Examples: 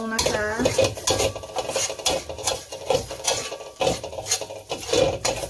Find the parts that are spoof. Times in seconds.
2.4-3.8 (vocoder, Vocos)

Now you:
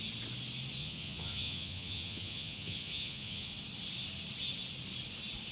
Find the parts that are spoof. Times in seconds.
0.8-3.5 (vocoder, Vocos)

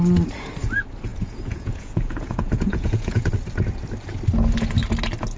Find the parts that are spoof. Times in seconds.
1.1-3.3 (vocoder, Vocos)

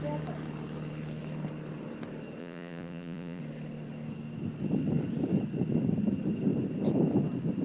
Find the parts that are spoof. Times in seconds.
2.4-3.4 (vocoder, Vocos)

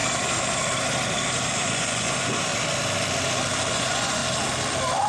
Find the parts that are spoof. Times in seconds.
1.6-2.5 (vocoder, Vocos); 3.7-4.2

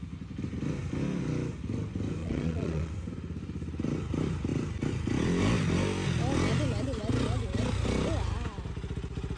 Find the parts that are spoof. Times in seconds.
2.2-2.9 (vocoder, Vocos)

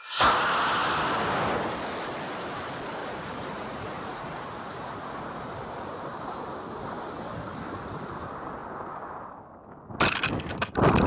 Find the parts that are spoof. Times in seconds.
3.0-5.5 (vocoder, Vocos)

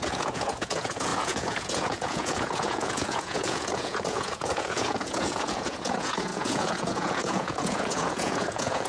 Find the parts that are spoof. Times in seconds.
0.0-8.9 (vocoder, Vocos)